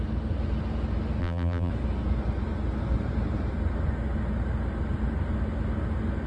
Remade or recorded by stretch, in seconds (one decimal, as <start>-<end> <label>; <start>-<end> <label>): 0.0-1.2 recorded; 1.2-1.7 remade; 1.7-6.3 recorded